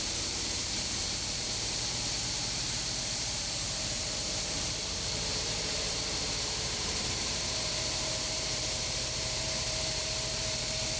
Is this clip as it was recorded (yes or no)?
no